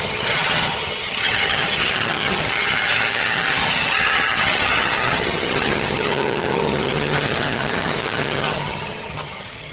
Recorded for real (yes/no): no